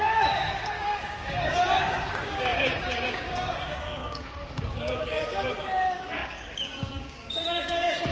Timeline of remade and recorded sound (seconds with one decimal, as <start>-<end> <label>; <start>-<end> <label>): 0.0-8.1 remade